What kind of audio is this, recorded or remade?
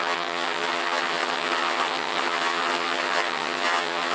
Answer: remade